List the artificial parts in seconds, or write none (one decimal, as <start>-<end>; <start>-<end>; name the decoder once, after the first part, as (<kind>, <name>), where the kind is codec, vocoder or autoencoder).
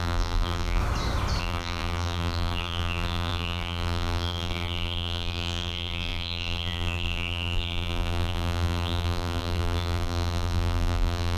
0.0-0.8 (vocoder, BigVGAN v2); 1.4-11.4